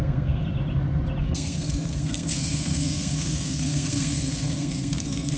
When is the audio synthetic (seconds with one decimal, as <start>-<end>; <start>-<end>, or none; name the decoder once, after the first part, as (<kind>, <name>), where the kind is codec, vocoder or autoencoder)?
0.0-0.4 (codec, SNAC); 1.2-5.4